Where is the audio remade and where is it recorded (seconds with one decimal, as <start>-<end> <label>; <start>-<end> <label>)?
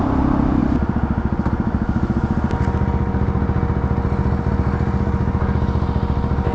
0.0-6.5 recorded